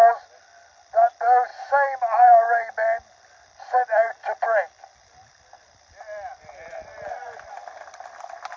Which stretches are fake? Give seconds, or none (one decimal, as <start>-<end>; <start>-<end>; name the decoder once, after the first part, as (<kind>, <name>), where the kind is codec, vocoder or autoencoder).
none

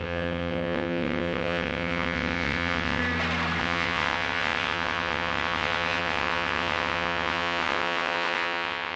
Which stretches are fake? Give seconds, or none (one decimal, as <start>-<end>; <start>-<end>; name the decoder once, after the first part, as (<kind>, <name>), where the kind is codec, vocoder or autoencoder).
0.0-3.0 (vocoder, WaveNeXt); 3.6-9.0